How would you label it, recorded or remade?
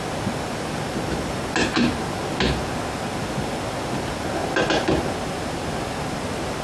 recorded